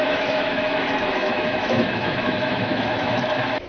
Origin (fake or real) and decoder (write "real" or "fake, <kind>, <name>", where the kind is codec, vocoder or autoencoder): fake, autoencoder, DAC-VAE